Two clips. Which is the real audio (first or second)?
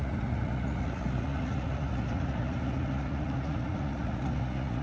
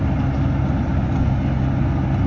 second